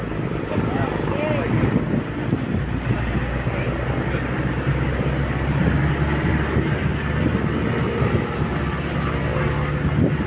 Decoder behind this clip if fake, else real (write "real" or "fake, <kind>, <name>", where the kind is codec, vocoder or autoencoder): real